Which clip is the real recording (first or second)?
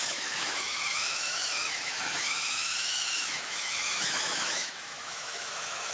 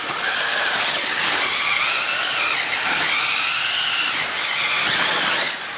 second